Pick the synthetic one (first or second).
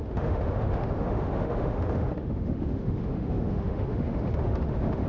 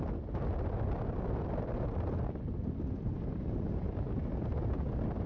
first